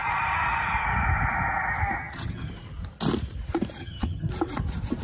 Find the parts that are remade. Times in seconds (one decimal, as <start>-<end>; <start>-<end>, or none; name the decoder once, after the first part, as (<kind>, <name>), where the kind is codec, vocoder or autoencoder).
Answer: 2.0-2.5 (vocoder, HiFi-GAN); 3.8-4.3